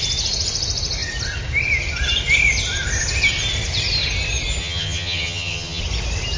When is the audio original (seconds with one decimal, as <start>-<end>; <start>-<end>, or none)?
0.0-4.6; 5.8-6.4